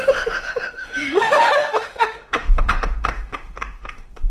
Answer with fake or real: fake